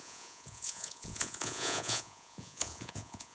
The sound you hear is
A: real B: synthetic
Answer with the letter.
B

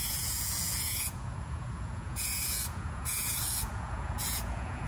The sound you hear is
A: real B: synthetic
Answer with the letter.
B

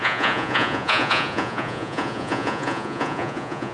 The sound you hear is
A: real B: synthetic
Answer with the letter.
B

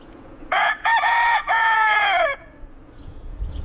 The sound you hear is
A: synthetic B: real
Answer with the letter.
A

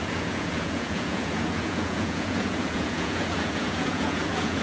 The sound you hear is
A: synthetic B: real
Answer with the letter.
A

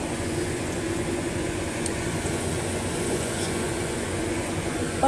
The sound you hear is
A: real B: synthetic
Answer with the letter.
B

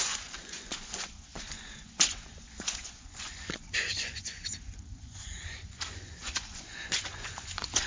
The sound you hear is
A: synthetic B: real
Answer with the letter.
A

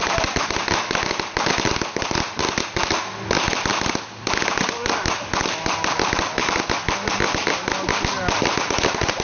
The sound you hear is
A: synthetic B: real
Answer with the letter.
B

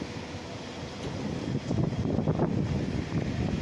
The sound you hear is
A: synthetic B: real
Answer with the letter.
B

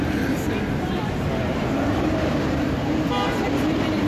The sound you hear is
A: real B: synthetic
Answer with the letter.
A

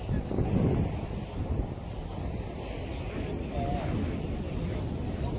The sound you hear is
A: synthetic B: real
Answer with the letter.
B